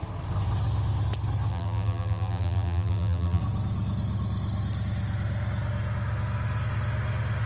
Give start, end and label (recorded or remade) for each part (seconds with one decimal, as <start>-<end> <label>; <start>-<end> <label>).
0.0-1.5 recorded; 1.5-3.4 remade; 3.4-7.5 recorded